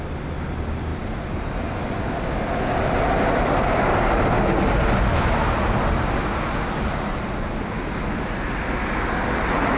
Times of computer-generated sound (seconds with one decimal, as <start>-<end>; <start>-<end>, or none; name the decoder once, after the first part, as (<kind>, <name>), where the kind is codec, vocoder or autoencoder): none